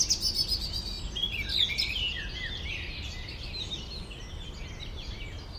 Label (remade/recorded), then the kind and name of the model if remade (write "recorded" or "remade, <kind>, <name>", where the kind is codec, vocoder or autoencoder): recorded